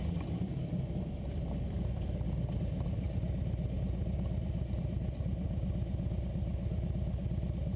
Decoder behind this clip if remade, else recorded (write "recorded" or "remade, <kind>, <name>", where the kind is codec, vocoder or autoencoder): recorded